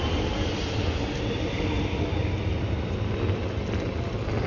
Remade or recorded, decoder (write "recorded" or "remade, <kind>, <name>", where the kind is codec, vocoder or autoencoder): recorded